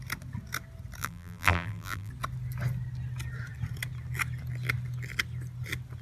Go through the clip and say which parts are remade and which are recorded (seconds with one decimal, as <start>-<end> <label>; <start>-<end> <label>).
0.0-1.0 recorded; 1.0-2.1 remade; 2.1-6.0 recorded